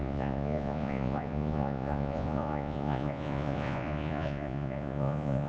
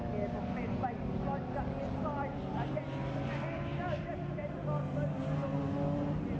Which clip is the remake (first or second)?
first